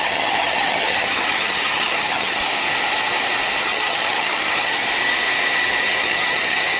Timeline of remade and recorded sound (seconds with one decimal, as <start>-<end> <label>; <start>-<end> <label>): 0.0-2.4 remade; 2.4-3.6 recorded; 3.6-4.8 remade; 4.8-5.8 recorded; 5.8-6.8 remade